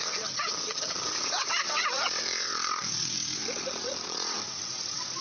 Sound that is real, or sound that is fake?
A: fake